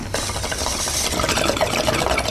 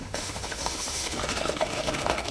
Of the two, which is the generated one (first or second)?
second